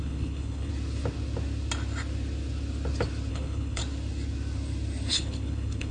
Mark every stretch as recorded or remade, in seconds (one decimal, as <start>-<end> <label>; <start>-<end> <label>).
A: 0.0-0.7 remade; 0.7-3.3 recorded; 3.3-3.8 remade; 3.8-5.1 recorded; 5.1-5.9 remade